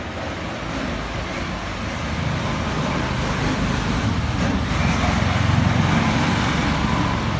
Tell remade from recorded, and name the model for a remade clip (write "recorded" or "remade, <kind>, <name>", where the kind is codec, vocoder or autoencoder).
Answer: recorded